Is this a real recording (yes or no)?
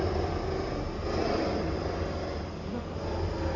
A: yes